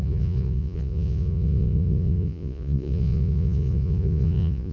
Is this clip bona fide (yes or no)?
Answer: no